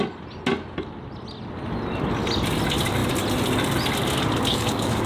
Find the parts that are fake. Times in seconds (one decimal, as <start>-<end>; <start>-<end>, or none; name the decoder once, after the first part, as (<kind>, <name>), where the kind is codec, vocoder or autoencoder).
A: 4.5-5.1 (codec, DAC)